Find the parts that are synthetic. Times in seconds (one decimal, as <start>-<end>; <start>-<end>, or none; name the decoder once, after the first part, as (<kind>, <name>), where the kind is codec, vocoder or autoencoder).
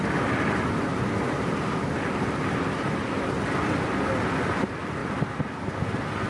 none